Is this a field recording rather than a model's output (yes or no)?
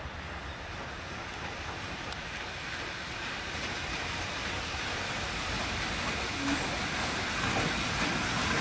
yes